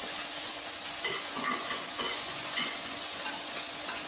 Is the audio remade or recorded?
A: remade